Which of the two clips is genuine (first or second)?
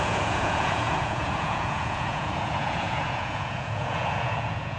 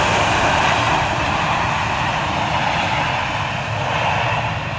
second